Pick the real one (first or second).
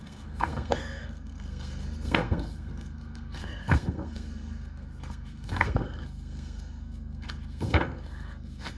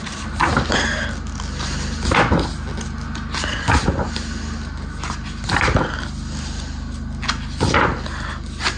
second